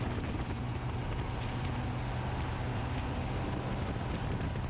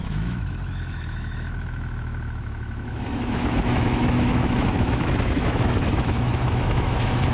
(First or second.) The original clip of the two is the first